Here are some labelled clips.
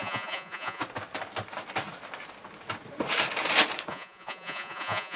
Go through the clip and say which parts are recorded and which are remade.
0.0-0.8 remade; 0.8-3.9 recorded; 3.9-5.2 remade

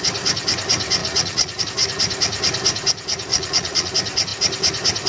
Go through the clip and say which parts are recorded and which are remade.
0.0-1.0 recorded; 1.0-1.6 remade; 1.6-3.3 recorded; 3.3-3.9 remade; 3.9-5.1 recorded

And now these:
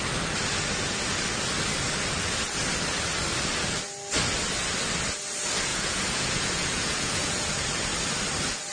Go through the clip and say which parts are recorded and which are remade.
0.0-5.7 recorded; 5.7-7.5 remade; 7.5-8.7 recorded

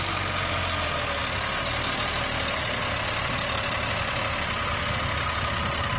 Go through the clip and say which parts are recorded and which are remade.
0.0-6.0 recorded